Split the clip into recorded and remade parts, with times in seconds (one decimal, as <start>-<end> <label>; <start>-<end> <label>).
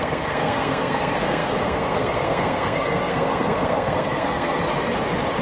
0.0-4.6 remade; 4.6-5.4 recorded